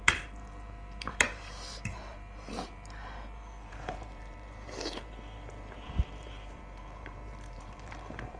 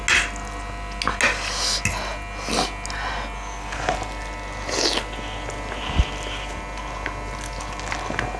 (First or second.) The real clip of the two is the second